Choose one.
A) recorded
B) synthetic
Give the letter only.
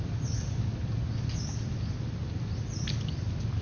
A